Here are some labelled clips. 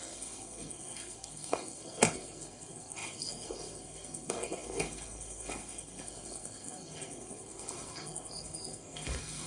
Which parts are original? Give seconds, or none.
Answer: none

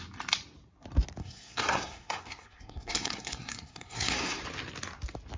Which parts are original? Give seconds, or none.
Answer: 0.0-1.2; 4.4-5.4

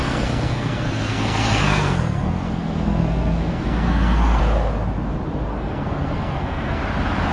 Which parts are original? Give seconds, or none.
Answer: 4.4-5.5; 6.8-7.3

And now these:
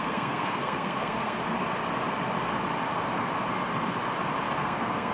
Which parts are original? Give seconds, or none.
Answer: 1.4-4.5